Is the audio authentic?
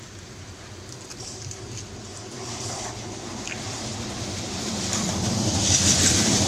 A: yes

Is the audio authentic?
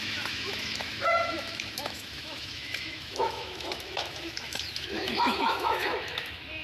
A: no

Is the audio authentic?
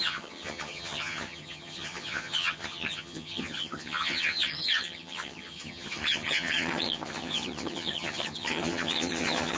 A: no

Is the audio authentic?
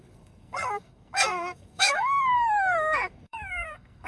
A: no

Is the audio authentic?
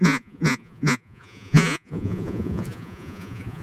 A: no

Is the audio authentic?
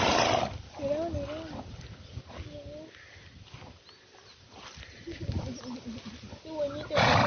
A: yes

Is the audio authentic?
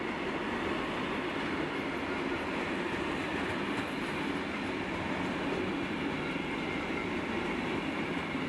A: yes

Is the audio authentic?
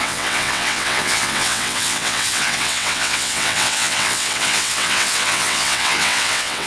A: no